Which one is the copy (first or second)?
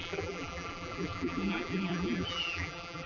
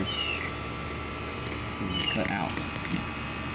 first